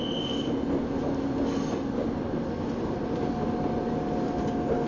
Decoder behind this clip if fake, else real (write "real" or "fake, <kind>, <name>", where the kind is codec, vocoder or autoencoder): real